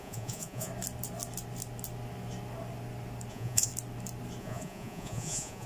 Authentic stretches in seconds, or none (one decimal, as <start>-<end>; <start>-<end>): 0.7-3.3; 3.7-4.4